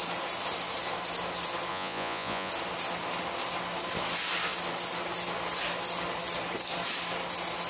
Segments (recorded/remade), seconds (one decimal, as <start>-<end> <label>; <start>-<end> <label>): 0.0-1.7 recorded; 1.7-2.5 remade; 2.5-7.7 recorded